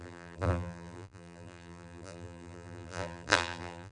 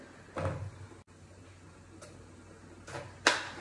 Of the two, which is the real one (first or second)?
second